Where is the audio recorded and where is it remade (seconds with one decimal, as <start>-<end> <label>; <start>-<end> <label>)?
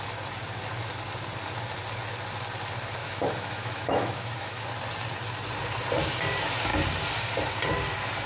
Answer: 0.0-3.0 recorded; 3.0-4.6 remade; 4.6-8.3 recorded